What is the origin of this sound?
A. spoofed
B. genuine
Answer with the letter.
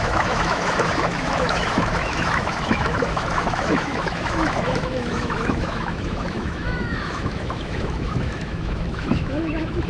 A